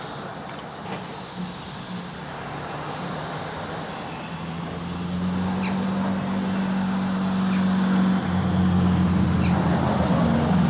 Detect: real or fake real